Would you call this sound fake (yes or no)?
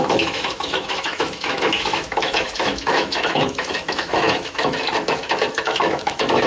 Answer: yes